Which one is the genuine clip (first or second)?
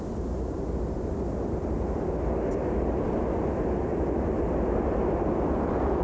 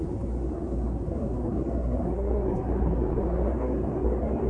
first